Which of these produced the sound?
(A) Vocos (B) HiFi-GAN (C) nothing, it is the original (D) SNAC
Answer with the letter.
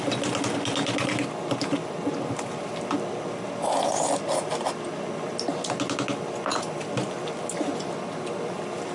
C